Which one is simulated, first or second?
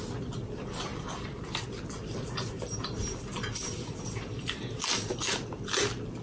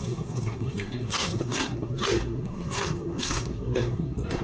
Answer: second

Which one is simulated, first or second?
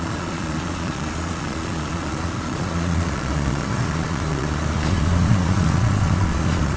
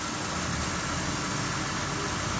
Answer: first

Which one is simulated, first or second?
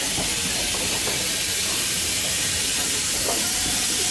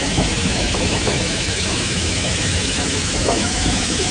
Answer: second